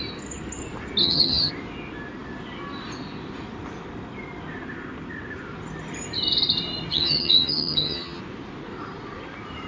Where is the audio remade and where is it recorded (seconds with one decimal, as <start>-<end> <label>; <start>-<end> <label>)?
0.0-1.0 recorded; 1.0-1.5 remade; 1.5-6.9 recorded; 6.9-8.2 remade; 8.2-9.7 recorded

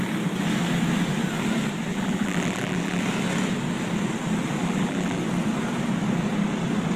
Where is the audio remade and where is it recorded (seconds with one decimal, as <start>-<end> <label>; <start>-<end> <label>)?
0.0-1.9 recorded; 1.9-3.0 remade; 3.0-4.6 recorded; 4.6-5.2 remade; 5.2-7.0 recorded

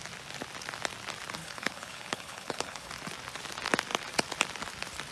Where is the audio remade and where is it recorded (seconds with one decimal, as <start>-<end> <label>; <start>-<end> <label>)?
0.0-1.4 recorded; 1.4-2.9 remade; 2.9-5.1 recorded

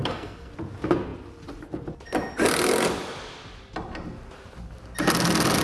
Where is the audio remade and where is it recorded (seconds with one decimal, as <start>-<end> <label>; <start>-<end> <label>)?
0.0-0.5 remade; 0.5-5.6 recorded